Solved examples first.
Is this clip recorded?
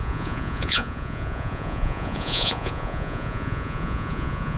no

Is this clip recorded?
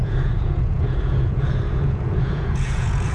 no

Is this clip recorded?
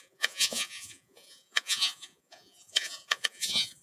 no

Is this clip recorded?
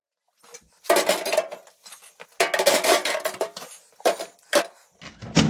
yes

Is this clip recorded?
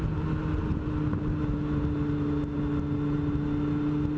yes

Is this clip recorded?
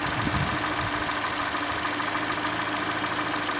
yes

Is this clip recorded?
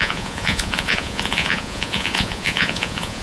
no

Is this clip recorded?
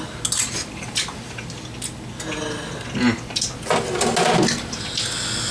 yes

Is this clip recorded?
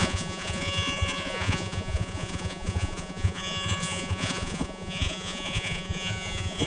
no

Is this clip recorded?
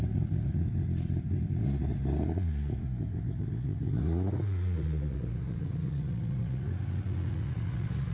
no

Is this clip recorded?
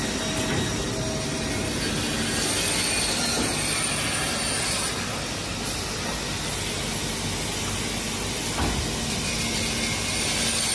yes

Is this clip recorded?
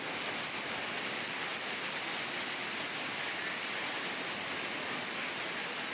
yes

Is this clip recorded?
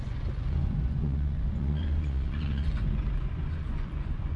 no